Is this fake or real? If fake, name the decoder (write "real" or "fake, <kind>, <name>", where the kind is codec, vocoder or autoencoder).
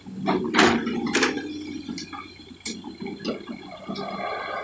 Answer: real